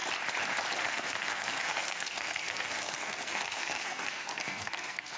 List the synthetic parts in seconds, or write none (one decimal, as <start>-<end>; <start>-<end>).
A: 0.8-5.2